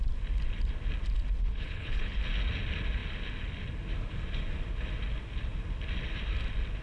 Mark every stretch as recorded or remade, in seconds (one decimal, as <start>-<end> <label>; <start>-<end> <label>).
0.0-1.4 recorded; 1.4-2.2 remade; 2.2-6.8 recorded